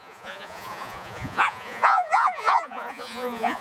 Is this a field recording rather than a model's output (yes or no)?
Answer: no